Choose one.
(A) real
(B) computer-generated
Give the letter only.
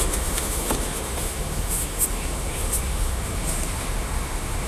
B